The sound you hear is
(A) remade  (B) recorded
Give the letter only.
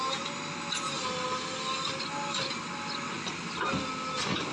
B